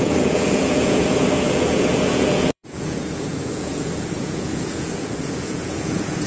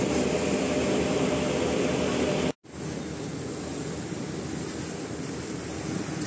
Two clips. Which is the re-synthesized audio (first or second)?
first